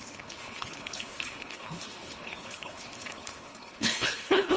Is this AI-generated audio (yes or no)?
yes